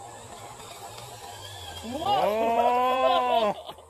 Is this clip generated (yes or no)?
yes